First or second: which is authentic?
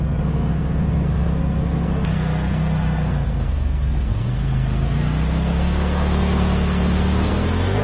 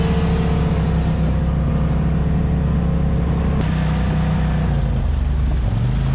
second